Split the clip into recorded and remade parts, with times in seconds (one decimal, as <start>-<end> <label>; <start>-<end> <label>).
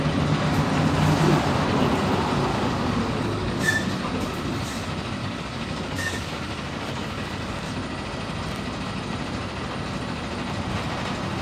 0.0-2.5 recorded; 2.5-3.6 remade; 3.6-5.2 recorded; 5.2-7.7 remade; 7.7-11.4 recorded